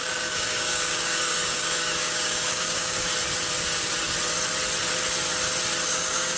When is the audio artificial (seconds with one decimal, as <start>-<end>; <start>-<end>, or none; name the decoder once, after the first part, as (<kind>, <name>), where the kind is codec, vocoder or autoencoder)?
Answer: 0.0-3.1 (codec, DAC); 5.9-6.4